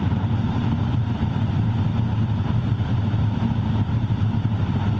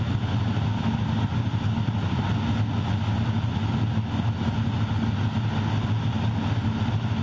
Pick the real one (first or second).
second